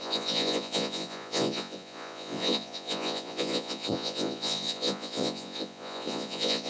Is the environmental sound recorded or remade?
remade